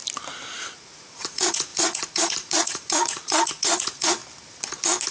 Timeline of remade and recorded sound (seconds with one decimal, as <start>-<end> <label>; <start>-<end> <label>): 0.0-0.6 recorded; 0.6-4.2 remade; 4.2-5.1 recorded